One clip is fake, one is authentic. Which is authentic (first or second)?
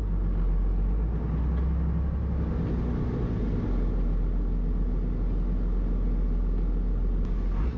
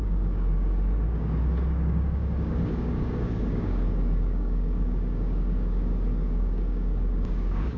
first